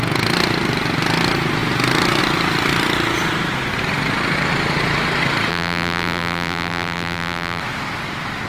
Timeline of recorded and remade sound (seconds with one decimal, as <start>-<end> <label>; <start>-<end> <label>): 0.0-5.5 recorded; 5.5-7.6 remade; 7.6-8.5 recorded